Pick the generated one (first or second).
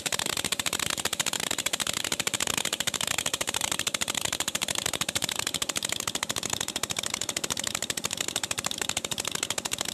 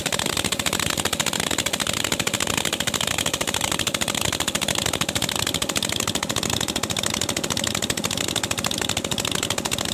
first